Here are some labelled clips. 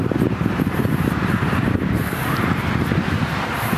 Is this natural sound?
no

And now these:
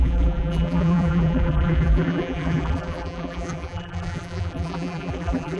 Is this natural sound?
no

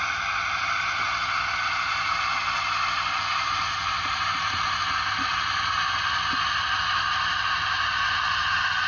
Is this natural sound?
yes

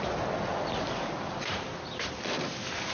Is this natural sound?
no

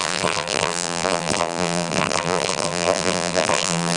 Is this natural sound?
no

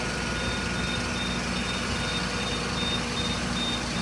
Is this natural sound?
yes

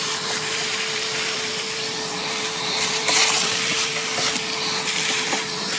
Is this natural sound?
no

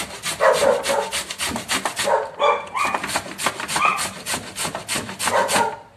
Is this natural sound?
yes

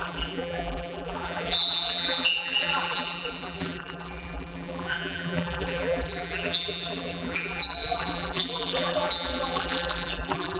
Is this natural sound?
no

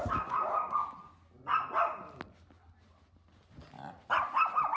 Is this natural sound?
yes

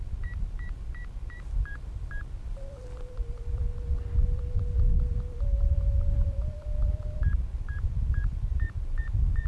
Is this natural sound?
no